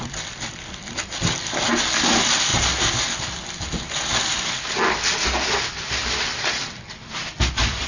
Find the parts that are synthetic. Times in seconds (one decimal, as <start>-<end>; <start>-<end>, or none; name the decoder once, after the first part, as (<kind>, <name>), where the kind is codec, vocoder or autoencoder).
0.0-2.5 (vocoder, BigVGAN v2); 3.3-6.0; 7.5-7.9